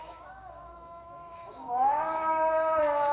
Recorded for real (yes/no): no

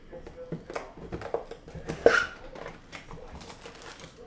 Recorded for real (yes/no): yes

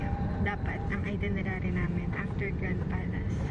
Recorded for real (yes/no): no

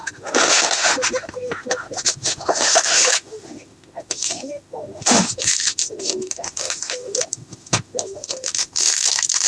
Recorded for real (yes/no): no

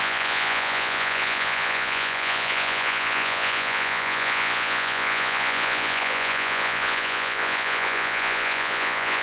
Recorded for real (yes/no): no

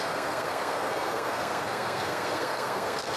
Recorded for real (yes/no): no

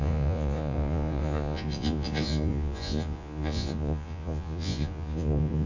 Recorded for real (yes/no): no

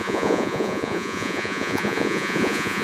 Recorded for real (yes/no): no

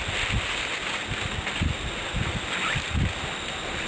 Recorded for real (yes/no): yes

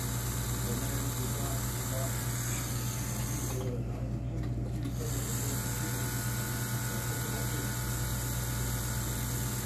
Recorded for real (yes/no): yes